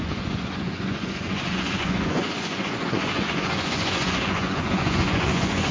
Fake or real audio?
fake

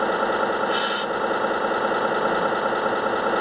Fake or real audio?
real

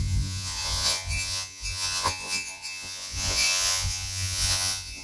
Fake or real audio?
fake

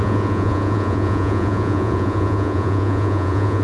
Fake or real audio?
fake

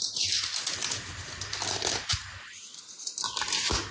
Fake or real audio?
real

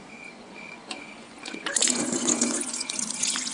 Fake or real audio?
fake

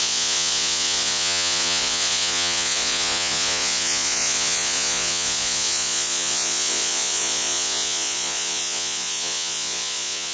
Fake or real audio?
fake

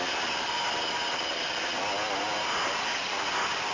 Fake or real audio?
real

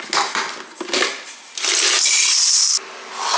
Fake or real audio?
real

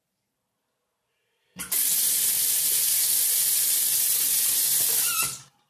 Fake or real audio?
real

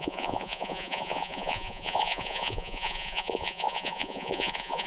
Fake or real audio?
fake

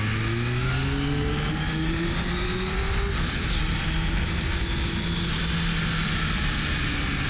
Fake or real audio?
real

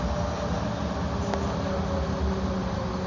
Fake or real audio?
real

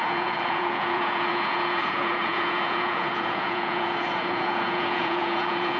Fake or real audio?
fake